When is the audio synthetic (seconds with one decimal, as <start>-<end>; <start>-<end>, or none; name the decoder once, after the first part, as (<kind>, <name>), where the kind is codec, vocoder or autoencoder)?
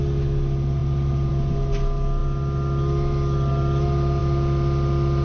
none